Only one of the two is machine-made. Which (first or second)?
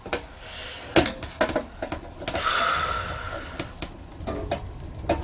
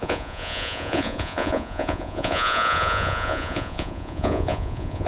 second